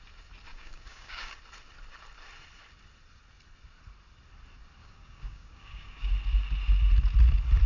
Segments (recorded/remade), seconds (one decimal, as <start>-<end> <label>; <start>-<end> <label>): 0.0-0.5 recorded; 0.5-1.3 remade; 1.3-4.8 recorded; 4.8-6.1 remade; 6.1-7.7 recorded